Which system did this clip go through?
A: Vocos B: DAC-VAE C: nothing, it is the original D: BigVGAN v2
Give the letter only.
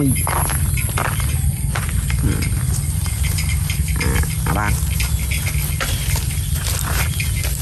C